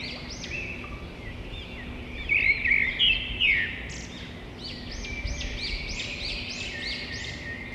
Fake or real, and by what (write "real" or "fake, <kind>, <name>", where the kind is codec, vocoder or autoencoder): real